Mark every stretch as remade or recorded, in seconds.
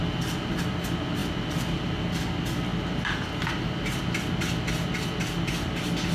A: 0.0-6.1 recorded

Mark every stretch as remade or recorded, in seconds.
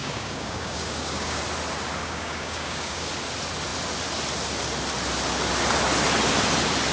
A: 0.0-1.4 remade; 1.4-2.0 recorded; 2.0-3.1 remade; 3.1-6.9 recorded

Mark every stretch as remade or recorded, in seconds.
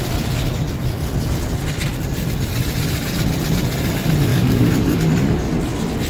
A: 0.0-4.3 recorded; 4.3-5.1 remade; 5.1-6.1 recorded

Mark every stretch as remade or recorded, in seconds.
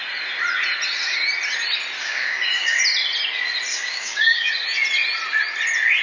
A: 0.0-2.0 recorded; 2.0-2.8 remade; 2.8-3.7 recorded; 3.7-4.5 remade; 4.5-6.0 recorded